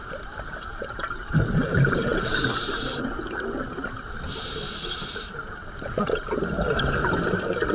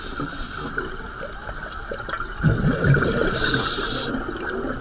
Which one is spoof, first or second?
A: first